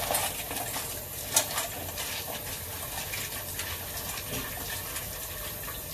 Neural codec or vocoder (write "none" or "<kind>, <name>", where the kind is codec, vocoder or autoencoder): none